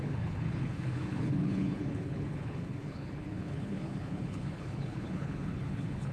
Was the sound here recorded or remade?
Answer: remade